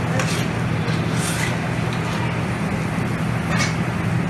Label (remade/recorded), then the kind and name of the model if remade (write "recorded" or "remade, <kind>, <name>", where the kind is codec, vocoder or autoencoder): recorded